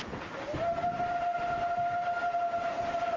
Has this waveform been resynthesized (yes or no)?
no